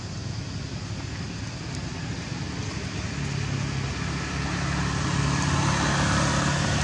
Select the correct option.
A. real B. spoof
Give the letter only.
A